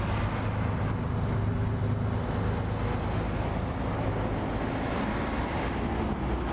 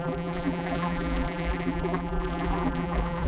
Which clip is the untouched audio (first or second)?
first